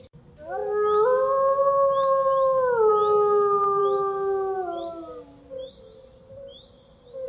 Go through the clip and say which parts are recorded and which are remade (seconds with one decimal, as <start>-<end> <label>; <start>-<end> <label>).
0.0-7.3 recorded